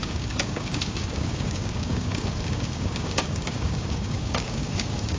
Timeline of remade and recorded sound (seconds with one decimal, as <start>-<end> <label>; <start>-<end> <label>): 0.0-5.2 remade

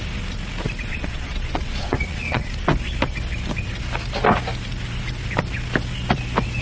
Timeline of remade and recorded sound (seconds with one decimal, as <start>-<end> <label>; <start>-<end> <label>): 0.0-0.9 recorded; 0.9-2.5 remade; 2.5-6.6 recorded

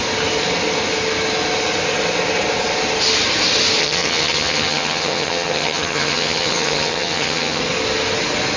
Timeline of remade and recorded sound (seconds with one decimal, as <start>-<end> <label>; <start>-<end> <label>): 0.0-3.8 recorded; 3.8-7.6 remade; 7.6-8.6 recorded